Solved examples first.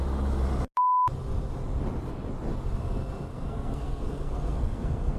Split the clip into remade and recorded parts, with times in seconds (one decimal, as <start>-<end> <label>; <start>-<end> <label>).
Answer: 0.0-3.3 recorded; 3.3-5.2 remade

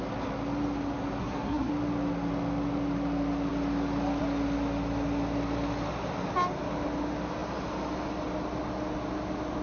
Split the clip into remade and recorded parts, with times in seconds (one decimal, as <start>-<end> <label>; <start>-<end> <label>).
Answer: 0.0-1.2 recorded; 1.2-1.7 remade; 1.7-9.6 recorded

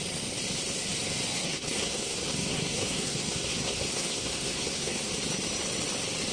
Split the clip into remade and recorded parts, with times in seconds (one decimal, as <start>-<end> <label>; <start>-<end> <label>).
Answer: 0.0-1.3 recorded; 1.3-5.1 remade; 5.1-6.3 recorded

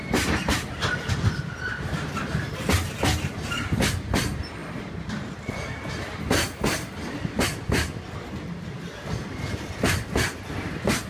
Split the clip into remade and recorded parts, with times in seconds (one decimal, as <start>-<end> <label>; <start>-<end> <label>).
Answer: 0.0-4.6 recorded; 4.6-5.3 remade; 5.3-11.1 recorded